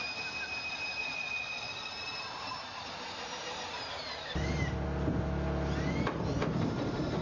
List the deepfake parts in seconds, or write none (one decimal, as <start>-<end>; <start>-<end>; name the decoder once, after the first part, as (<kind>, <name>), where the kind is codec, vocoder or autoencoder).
1.0-1.7 (vocoder, Vocos)